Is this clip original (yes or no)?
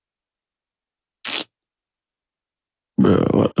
yes